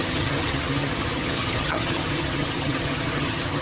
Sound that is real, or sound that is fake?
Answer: fake